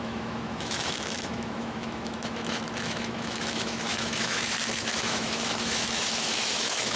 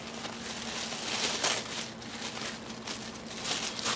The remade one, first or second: first